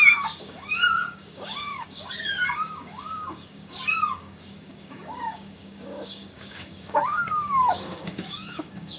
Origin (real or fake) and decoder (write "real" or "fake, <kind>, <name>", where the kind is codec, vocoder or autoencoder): fake, codec, DAC